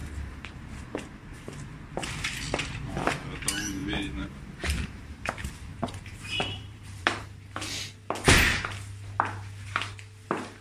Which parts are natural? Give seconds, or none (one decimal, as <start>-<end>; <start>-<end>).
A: 0.7-3.8; 5.2-5.7; 7.5-10.6